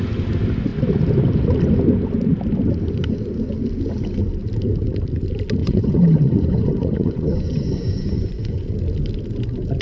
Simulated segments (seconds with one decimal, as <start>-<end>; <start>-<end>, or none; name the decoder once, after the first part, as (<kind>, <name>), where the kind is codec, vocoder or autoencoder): 5.6-8.6 (vocoder, Vocos)